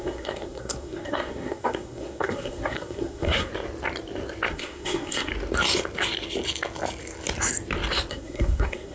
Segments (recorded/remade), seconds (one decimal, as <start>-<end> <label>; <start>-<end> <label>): 0.0-3.5 remade; 3.5-4.5 recorded; 4.5-5.3 remade; 5.3-8.1 recorded; 8.1-8.9 remade